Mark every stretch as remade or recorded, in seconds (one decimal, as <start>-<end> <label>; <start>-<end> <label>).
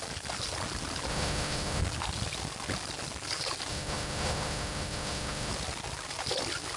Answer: 0.0-1.1 recorded; 1.1-1.8 remade; 1.8-3.7 recorded; 3.7-5.5 remade; 5.5-6.8 recorded